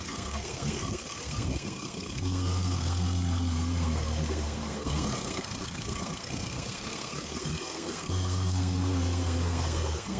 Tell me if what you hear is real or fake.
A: fake